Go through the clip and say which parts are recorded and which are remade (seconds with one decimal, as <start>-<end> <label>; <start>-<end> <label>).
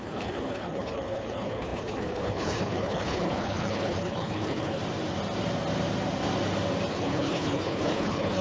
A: 0.0-4.8 remade; 4.8-6.9 recorded; 6.9-8.4 remade